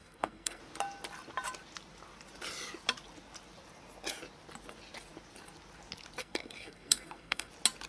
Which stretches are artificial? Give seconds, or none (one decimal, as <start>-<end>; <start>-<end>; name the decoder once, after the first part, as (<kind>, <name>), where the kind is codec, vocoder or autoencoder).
0.0-0.6 (codec, SNAC); 6.2-7.5